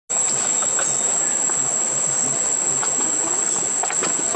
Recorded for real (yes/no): yes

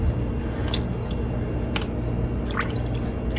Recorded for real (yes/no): yes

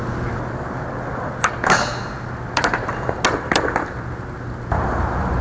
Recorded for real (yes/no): yes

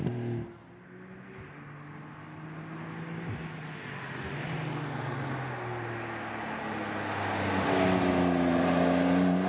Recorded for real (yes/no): yes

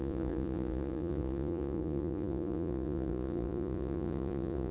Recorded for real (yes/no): no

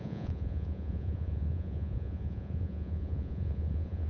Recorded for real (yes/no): no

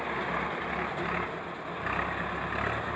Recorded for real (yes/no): yes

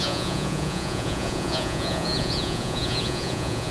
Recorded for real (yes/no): no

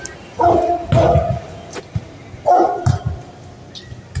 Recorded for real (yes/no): yes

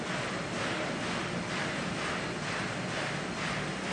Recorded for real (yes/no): yes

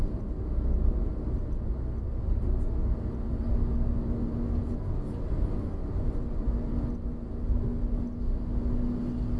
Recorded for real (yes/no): yes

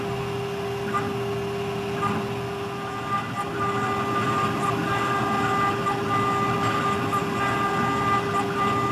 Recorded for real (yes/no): yes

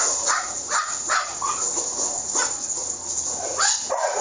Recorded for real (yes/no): no